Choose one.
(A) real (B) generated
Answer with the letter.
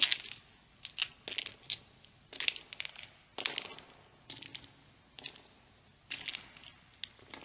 A